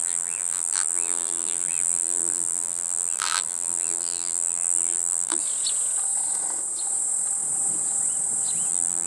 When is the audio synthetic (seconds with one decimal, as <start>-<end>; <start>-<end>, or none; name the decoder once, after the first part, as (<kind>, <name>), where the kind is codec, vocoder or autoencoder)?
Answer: 0.0-5.4 (vocoder, BigVGAN v2); 8.7-9.1